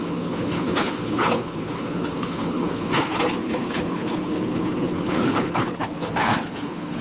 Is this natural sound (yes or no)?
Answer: no